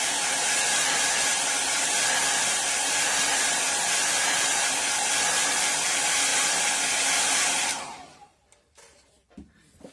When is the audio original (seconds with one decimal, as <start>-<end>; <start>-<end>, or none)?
6.3-7.5